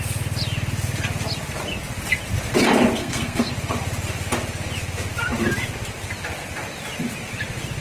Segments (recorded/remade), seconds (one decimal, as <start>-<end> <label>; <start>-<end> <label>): 0.0-3.0 recorded; 3.0-3.5 remade; 3.5-7.8 recorded